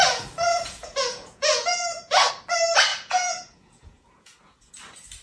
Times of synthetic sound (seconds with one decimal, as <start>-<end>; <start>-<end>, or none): 0.5-2.3; 2.9-4.7